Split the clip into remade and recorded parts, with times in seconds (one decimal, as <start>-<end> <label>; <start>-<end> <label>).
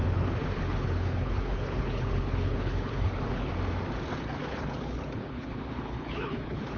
0.0-3.5 remade; 3.5-4.4 recorded; 4.4-6.8 remade